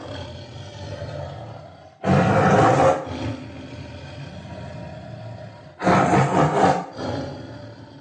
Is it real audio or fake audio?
real